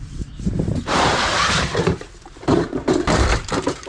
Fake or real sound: fake